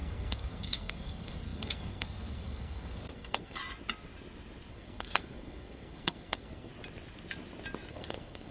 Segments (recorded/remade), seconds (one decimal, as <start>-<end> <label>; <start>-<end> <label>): 0.0-3.6 remade; 3.6-4.7 recorded; 4.7-6.7 remade; 6.7-7.9 recorded; 7.9-8.5 remade